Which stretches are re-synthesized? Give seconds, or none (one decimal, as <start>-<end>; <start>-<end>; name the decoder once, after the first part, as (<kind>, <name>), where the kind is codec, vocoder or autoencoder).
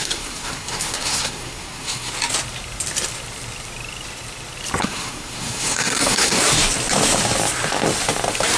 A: 0.0-2.1 (codec, SNAC); 4.8-6.4